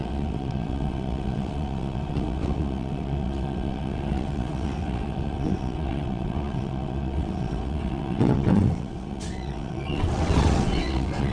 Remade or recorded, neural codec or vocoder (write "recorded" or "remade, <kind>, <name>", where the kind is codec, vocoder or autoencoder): remade, vocoder, WaveNeXt